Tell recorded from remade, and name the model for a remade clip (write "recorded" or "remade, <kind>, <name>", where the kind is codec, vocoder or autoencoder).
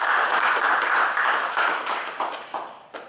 recorded